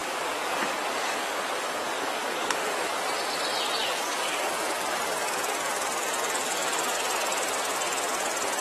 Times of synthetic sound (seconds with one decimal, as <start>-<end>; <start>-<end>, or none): 0.0-3.0; 3.8-7.0